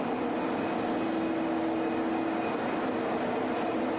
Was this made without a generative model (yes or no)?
yes